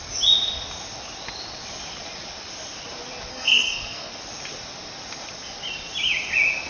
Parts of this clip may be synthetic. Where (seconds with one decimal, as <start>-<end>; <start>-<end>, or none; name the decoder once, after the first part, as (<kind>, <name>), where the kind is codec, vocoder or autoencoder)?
3.3-4.1 (codec, SNAC)